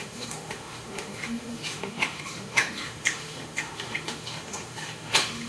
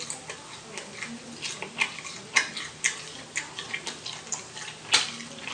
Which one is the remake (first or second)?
first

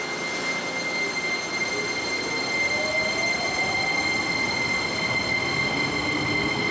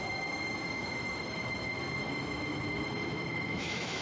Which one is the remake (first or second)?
second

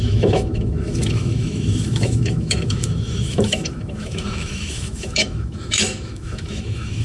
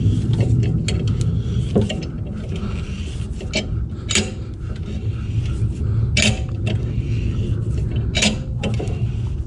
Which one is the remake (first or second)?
first